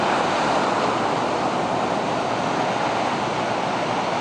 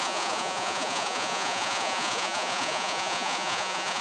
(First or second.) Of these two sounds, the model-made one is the second